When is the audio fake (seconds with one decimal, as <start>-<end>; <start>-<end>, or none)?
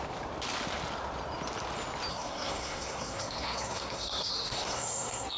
2.1-5.4